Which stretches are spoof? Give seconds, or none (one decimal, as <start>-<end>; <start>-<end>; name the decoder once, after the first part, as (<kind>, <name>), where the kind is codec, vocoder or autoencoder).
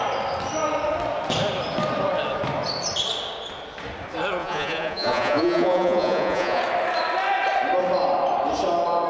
4.4-6.6 (vocoder, Vocos)